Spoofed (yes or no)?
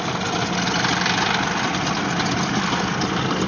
no